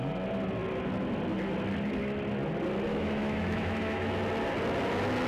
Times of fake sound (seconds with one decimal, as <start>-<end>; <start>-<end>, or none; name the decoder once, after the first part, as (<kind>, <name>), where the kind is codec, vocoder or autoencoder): 2.9-4.1 (autoencoder, DAC-VAE)